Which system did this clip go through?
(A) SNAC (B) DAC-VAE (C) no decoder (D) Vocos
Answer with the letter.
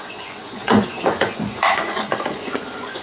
D